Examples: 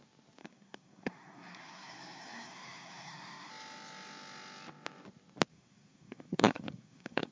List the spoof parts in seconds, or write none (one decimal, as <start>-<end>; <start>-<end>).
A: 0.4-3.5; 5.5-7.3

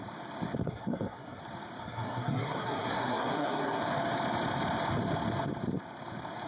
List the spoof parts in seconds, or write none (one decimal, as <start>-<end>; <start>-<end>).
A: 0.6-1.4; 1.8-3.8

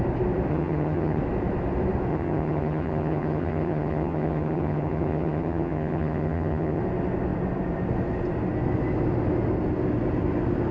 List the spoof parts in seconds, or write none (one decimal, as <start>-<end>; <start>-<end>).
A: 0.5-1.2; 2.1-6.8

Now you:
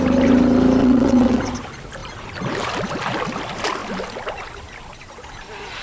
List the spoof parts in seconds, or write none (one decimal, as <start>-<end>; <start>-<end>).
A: 0.8-1.4

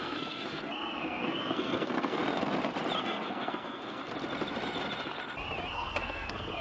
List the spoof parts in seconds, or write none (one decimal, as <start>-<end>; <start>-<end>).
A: 0.0-2.2; 3.0-4.0; 5.7-6.6

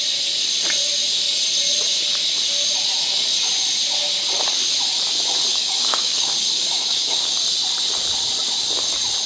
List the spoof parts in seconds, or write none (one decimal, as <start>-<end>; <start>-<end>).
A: 5.5-7.4

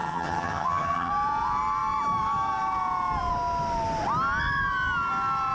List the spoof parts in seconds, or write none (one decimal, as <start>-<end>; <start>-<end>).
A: 0.0-1.1